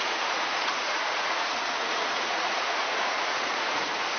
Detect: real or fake fake